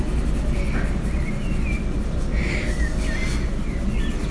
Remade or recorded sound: recorded